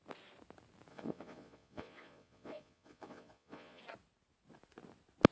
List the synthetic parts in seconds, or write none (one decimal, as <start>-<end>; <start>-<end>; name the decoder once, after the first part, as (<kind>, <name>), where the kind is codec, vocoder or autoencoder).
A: 0.9-3.8 (vocoder, Vocos)